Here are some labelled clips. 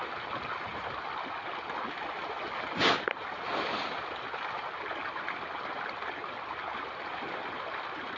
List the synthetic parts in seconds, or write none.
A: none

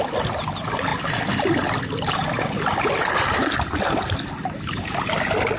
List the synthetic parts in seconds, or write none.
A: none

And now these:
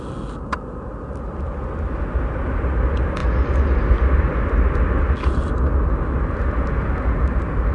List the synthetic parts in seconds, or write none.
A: none

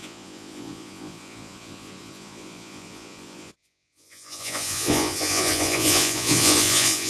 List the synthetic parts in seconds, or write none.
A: 0.0-7.1 (vocoder, Vocos)

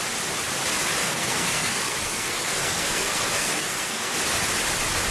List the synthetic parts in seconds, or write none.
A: 1.0-4.1 (codec, SNAC)